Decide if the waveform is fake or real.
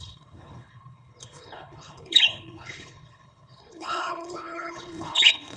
fake